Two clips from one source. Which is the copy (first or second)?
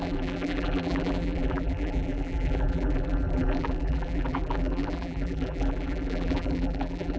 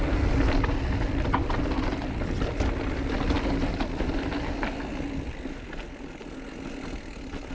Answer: first